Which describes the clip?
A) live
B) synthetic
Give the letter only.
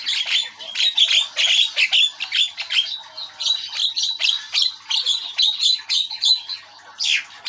A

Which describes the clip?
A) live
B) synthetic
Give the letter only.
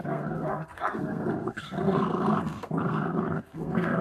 B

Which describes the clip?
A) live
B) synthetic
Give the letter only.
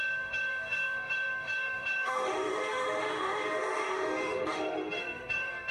B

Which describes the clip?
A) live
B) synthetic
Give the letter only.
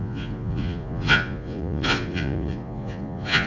B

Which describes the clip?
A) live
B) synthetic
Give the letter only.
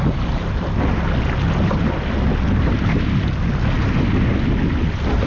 A